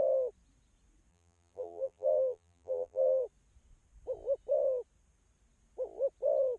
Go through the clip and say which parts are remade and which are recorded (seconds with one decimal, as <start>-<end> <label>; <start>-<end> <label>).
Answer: 0.0-1.1 recorded; 1.1-3.2 remade; 3.2-6.6 recorded